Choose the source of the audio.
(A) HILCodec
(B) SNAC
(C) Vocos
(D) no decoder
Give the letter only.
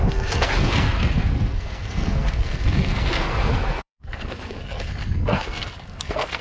B